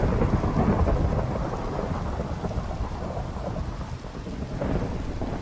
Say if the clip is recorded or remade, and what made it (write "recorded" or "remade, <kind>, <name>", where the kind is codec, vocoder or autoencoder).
recorded